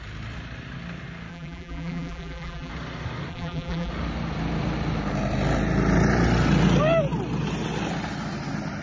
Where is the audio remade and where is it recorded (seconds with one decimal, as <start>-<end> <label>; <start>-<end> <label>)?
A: 0.0-1.3 recorded; 1.3-2.7 remade; 2.7-3.3 recorded; 3.3-3.9 remade; 3.9-8.8 recorded